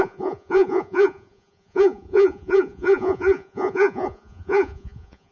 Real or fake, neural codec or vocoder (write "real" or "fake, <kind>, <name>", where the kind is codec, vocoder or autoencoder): fake, vocoder, Vocos